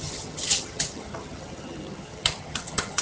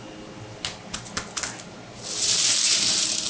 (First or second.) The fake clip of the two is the first